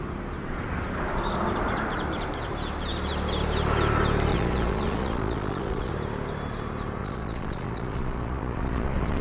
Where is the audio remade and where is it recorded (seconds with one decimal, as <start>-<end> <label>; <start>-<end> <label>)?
0.0-4.3 recorded; 4.3-5.9 remade; 5.9-7.0 recorded; 7.0-9.2 remade